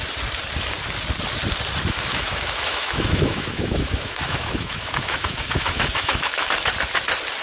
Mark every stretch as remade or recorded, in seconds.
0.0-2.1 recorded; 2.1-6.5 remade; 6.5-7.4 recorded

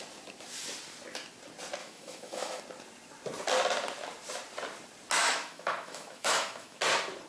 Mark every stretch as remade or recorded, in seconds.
0.0-1.8 recorded; 1.8-2.6 remade; 2.6-5.2 recorded; 5.2-6.8 remade; 6.8-7.3 recorded

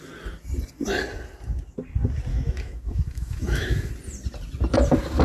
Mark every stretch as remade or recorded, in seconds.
0.0-2.3 recorded; 2.3-3.9 remade; 3.9-5.2 recorded

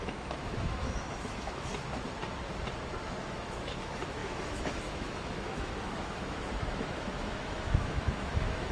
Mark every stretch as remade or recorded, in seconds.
0.0-1.7 remade; 1.7-3.2 recorded; 3.2-8.7 remade

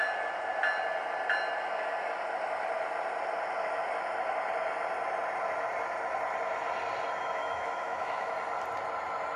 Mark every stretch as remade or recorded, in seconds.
0.0-7.4 recorded; 7.4-8.3 remade; 8.3-9.4 recorded